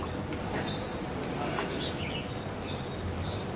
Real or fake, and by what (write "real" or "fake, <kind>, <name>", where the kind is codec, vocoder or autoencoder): real